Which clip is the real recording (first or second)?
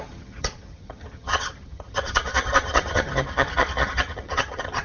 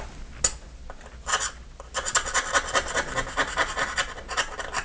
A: second